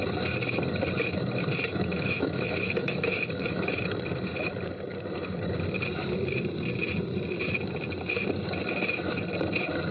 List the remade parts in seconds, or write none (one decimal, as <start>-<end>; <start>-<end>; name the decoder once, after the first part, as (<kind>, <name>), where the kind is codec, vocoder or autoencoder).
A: 1.7-3.7 (autoencoder, DAC-VAE)